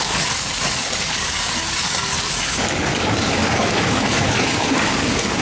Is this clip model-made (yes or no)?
yes